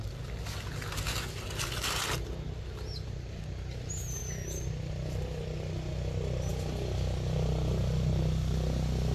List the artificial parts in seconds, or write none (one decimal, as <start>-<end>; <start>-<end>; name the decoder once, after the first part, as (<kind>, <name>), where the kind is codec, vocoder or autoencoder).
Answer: none